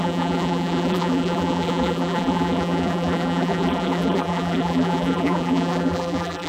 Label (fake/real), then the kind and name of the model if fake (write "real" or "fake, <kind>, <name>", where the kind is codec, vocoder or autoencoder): fake, vocoder, BigVGAN v2